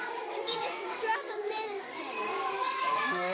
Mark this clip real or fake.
fake